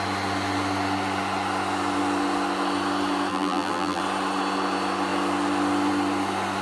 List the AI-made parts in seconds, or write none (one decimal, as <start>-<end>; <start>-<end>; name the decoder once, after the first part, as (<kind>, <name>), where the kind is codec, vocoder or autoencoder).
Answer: 3.3-4.0 (vocoder, BigVGAN v2)